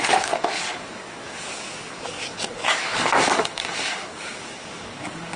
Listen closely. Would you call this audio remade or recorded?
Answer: remade